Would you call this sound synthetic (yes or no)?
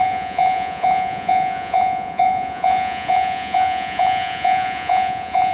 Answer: yes